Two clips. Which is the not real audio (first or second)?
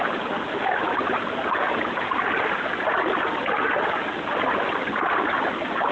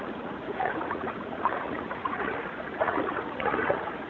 second